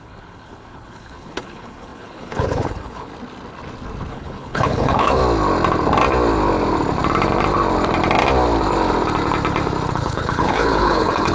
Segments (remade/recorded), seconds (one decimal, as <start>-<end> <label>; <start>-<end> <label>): 0.0-3.1 remade; 3.1-4.1 recorded; 4.1-5.2 remade; 5.2-9.9 recorded; 9.9-11.3 remade